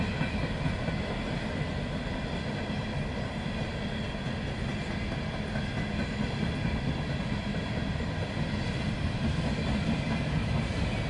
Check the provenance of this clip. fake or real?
real